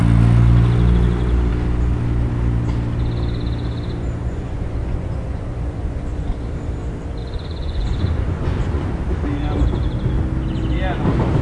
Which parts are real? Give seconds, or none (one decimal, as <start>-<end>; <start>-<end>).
0.0-4.2; 6.3-7.2; 8.9-11.4